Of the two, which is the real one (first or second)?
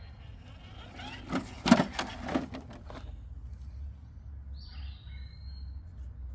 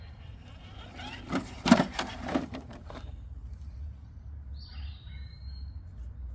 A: first